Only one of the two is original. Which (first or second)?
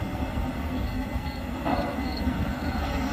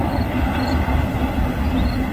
second